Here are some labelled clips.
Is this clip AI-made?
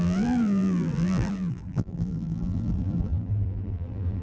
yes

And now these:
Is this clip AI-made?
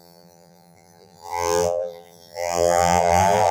yes